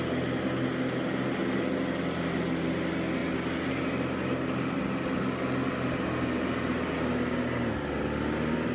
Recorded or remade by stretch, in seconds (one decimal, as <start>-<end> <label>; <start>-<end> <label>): 0.0-8.7 recorded

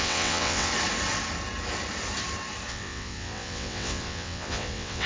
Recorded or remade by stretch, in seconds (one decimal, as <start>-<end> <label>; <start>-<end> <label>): 0.0-0.7 remade; 0.7-2.7 recorded; 2.7-5.1 remade